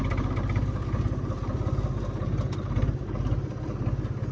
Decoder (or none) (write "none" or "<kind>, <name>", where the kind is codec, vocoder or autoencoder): none